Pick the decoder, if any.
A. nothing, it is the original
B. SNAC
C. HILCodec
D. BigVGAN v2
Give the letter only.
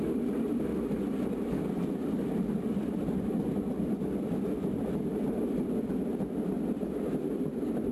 A